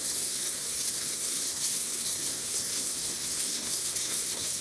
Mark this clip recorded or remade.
remade